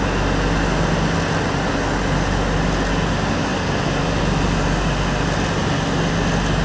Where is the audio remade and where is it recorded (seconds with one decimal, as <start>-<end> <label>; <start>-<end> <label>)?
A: 0.0-6.6 recorded